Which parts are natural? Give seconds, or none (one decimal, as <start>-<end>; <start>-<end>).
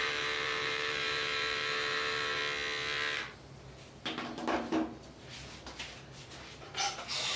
2.4-6.6